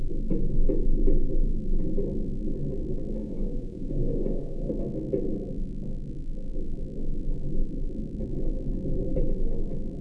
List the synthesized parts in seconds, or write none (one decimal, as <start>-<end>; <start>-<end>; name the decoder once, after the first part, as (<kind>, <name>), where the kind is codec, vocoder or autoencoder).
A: 3.2-4.7 (vocoder, Vocos)